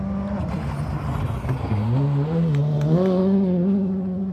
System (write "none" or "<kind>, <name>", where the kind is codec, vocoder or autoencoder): none